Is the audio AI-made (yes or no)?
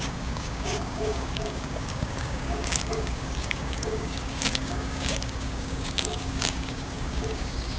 yes